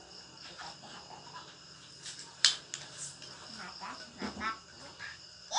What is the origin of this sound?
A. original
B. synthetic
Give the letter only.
A